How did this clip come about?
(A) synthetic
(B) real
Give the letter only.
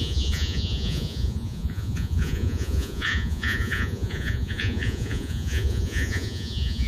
A